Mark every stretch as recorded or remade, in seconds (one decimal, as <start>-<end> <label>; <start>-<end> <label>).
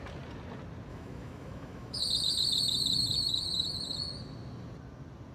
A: 0.0-0.9 recorded; 0.9-2.0 remade; 2.0-5.3 recorded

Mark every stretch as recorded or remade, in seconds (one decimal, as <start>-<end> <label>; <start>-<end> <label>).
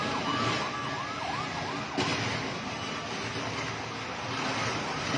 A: 0.0-5.2 recorded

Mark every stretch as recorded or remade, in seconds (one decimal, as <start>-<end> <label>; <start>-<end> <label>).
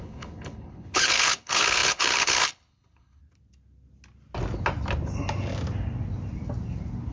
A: 0.0-3.2 remade; 3.2-7.1 recorded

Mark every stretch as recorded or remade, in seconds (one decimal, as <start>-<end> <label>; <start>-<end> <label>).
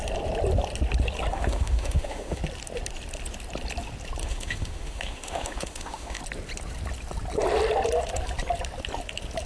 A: 0.0-1.3 recorded; 1.3-2.4 remade; 2.4-4.2 recorded; 4.2-6.2 remade; 6.2-9.5 recorded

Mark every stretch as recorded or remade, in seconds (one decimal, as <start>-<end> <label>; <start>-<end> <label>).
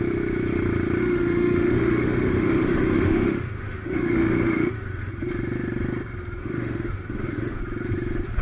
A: 0.0-1.0 recorded; 1.0-5.1 remade; 5.1-6.4 recorded; 6.4-7.6 remade; 7.6-8.4 recorded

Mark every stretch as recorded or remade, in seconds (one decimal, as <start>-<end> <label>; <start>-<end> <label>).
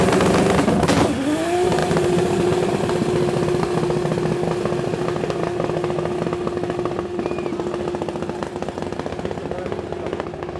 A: 0.0-1.8 recorded; 1.8-2.9 remade; 2.9-10.6 recorded